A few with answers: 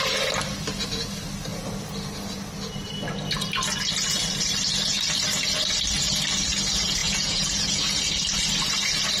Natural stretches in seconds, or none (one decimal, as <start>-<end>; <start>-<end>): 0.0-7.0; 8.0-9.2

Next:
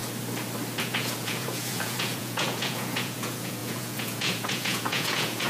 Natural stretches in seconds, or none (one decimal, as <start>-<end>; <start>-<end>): 0.0-0.8

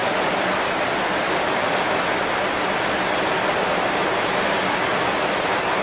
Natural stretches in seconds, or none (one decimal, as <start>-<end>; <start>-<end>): 0.0-5.8

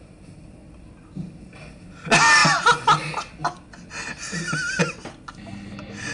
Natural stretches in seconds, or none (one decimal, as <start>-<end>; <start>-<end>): 0.0-6.1

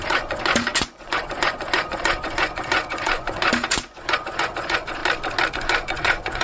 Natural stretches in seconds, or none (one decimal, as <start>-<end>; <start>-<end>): 5.0-5.5

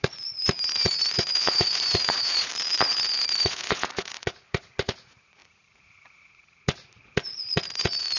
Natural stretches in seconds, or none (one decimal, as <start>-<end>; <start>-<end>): 2.5-3.2